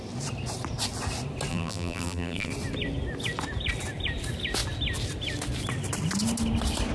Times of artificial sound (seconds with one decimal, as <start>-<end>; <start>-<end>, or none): 1.5-2.5

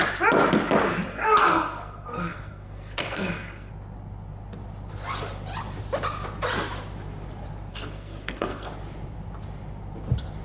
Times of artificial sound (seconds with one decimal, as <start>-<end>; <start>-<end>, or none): 1.1-3.7; 7.7-8.7

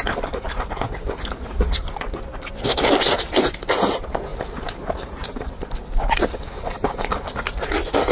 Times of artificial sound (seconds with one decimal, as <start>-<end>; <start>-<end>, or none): none

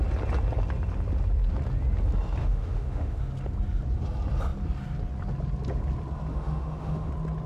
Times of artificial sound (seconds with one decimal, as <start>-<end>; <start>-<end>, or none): 2.4-3.2; 6.3-7.1

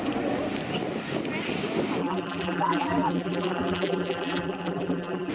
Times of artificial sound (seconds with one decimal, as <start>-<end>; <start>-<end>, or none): 2.0-5.3